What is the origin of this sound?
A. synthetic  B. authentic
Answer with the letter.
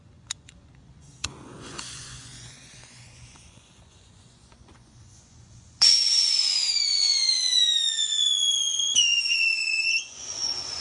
A